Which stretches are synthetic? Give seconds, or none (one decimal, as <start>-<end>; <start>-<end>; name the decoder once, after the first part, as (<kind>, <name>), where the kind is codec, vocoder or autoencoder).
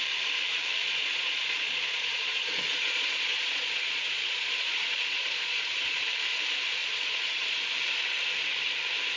0.8-6.0 (vocoder, Vocos); 6.8-7.6